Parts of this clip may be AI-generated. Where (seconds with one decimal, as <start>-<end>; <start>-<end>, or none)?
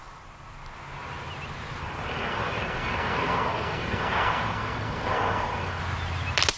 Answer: 1.8-5.8